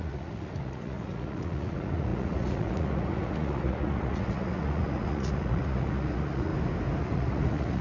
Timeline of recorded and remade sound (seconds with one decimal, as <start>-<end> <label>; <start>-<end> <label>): 0.0-6.5 remade; 6.5-7.0 recorded; 7.0-7.8 remade